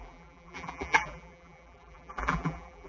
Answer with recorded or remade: remade